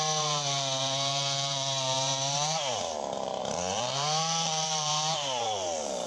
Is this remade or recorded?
remade